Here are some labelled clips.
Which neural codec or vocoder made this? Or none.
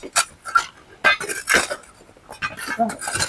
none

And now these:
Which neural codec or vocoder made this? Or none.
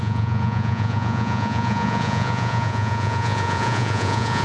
vocoder, Vocos